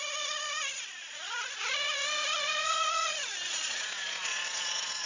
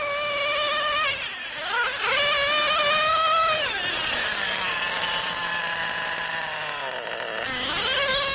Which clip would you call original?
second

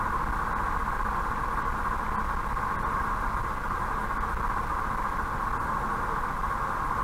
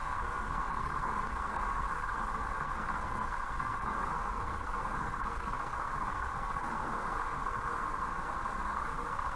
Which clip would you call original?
first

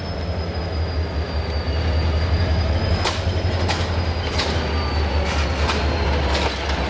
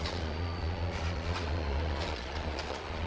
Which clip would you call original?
first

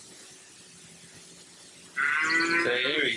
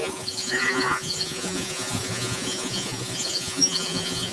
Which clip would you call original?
first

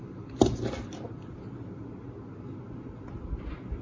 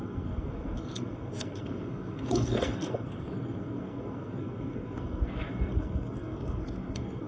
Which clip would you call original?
first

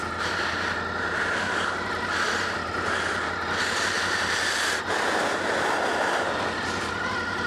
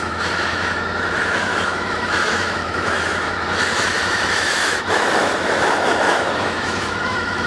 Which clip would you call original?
first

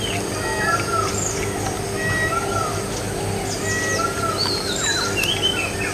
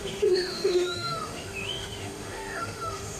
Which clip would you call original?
first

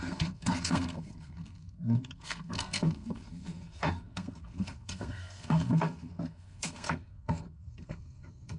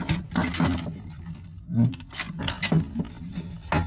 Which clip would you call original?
second